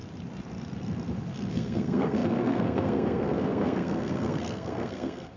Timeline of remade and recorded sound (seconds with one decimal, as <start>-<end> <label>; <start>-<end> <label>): 0.0-1.5 recorded; 1.5-5.4 remade